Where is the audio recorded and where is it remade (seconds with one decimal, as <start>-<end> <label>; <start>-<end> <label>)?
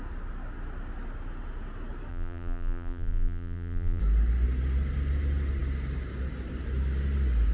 0.0-2.1 recorded; 2.1-4.0 remade; 4.0-7.5 recorded